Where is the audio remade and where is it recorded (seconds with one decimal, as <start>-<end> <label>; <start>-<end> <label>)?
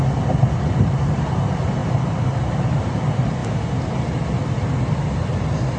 0.0-5.8 recorded